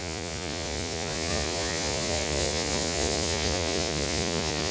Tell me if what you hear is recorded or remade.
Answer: remade